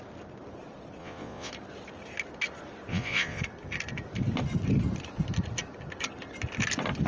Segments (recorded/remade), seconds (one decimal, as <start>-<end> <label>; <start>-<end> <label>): 0.0-1.0 recorded; 1.0-1.5 remade; 1.5-2.9 recorded; 2.9-3.4 remade; 3.4-7.1 recorded